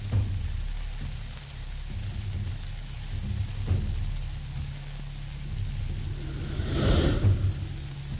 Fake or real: real